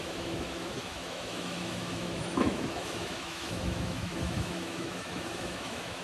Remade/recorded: remade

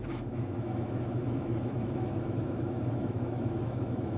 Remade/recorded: remade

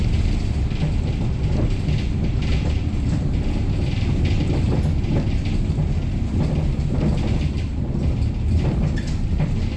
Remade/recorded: recorded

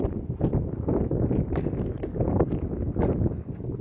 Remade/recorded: recorded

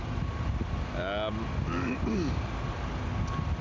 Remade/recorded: recorded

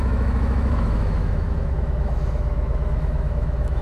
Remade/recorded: remade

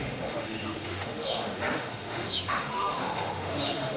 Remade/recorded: remade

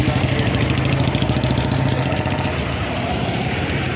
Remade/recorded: recorded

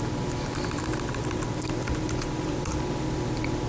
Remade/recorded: recorded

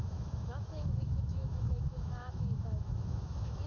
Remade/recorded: remade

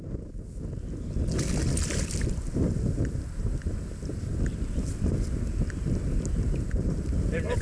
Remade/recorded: recorded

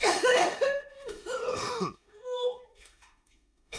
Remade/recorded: remade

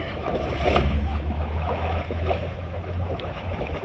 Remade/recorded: remade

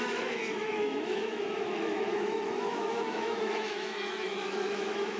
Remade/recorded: remade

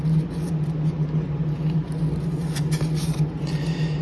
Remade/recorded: recorded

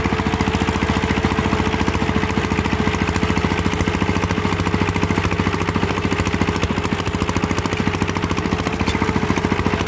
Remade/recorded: recorded